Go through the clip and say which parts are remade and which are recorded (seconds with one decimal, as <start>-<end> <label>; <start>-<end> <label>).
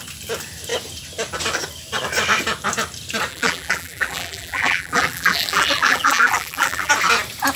0.0-3.3 recorded; 3.3-6.9 remade; 6.9-7.6 recorded